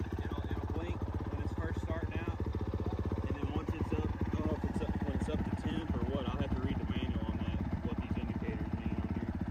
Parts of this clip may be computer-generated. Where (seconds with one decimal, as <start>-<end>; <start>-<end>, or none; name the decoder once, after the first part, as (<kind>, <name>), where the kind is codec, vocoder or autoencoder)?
0.0-2.5 (vocoder, BigVGAN v2); 4.1-9.5

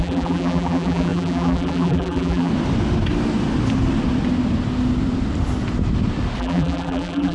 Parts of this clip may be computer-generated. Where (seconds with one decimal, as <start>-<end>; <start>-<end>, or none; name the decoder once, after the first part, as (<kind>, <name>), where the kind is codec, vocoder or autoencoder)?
0.0-2.5 (vocoder, BigVGAN v2); 6.4-7.3

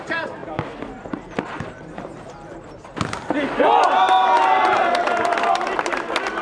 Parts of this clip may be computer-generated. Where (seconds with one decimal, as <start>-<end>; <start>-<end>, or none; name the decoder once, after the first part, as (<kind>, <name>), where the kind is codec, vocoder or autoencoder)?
0.0-0.4 (vocoder, BigVGAN v2); 1.4-2.9; 4.4-6.4

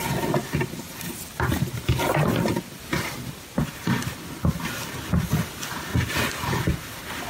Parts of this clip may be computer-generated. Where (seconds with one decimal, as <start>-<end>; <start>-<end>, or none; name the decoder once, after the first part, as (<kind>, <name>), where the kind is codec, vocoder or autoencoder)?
2.5-4.0 (vocoder, BigVGAN v2); 5.9-6.4

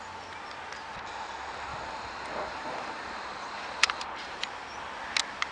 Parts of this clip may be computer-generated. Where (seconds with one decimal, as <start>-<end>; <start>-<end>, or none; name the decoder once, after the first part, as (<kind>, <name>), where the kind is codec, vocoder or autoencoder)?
1.7-4.4 (vocoder, BigVGAN v2)

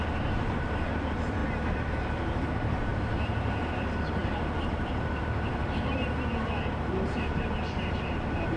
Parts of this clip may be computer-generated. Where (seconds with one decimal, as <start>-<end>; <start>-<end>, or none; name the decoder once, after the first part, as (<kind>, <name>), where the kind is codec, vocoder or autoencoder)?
0.0-1.4 (vocoder, BigVGAN v2); 2.5-5.6; 6.8-8.6

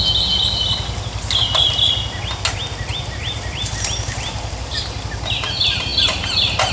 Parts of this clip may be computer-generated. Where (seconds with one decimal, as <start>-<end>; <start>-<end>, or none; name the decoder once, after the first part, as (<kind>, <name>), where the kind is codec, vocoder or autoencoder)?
2.9-4.7 (vocoder, BigVGAN v2)